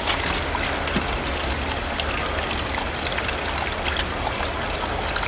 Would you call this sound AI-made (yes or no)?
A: no